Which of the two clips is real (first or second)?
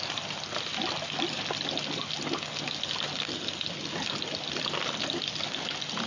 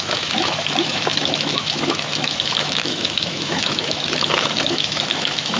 first